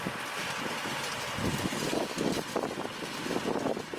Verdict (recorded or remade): recorded